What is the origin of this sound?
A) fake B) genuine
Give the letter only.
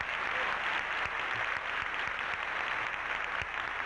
B